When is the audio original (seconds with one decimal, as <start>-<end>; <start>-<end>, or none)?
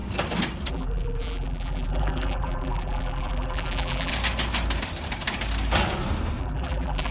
0.0-0.7; 4.1-6.4